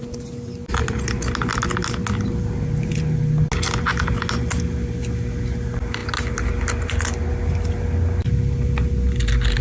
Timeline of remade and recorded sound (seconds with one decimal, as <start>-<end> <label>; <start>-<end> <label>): 0.0-9.6 recorded